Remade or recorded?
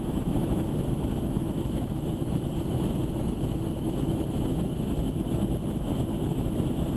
remade